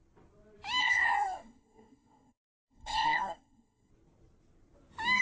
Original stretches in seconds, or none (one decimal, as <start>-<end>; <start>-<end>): 0.0-0.8; 3.9-5.2